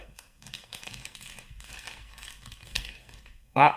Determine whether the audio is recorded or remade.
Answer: remade